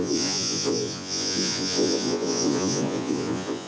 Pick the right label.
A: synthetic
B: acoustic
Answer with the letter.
A